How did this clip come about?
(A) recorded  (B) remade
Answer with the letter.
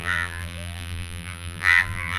B